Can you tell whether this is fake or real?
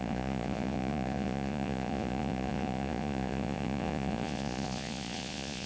fake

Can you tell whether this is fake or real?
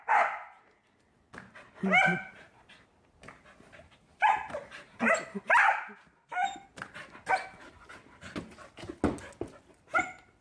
real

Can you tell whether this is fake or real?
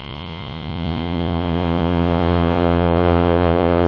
fake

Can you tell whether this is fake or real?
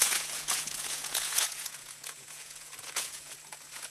fake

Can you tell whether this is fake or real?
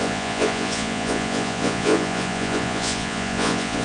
fake